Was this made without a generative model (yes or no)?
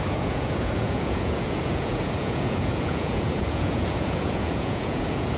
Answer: no